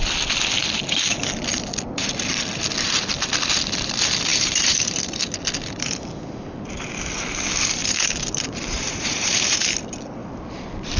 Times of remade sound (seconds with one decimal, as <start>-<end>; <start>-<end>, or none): 4.3-5.0; 7.8-9.7; 10.2-11.0

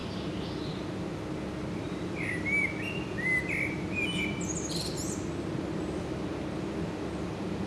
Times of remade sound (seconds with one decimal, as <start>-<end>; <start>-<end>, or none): none

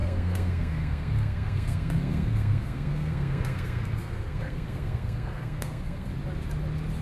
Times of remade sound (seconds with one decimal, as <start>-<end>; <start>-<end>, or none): 0.0-6.1

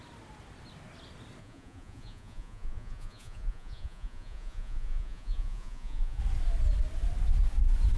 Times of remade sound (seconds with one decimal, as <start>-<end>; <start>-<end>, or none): 1.4-6.2

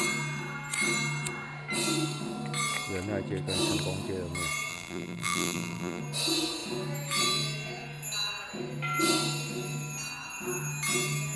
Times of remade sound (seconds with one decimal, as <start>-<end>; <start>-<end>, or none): 4.7-6.0

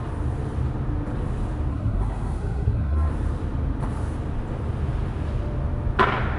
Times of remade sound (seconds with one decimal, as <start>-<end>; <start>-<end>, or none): 1.7-3.1

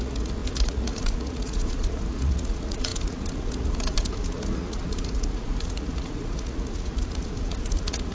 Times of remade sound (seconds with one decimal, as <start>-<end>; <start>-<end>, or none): 0.0-8.1